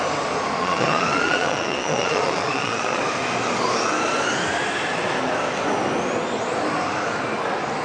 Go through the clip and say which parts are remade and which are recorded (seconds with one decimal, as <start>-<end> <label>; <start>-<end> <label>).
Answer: 0.0-0.6 recorded; 0.6-3.0 remade; 3.0-7.8 recorded